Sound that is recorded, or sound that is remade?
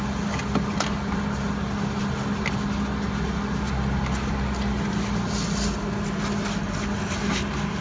recorded